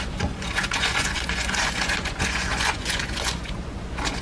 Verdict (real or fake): fake